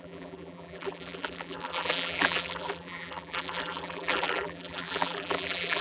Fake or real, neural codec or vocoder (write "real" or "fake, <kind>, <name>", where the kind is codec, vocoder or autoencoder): fake, vocoder, BigVGAN v2